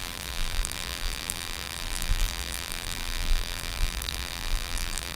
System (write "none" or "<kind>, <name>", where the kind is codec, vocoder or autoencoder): vocoder, BigVGAN v2